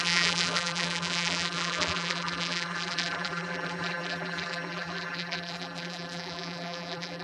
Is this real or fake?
fake